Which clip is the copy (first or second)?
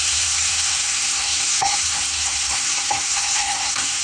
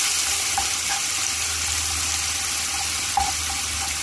first